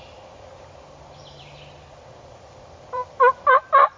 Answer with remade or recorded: remade